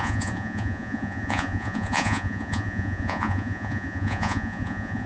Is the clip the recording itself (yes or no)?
no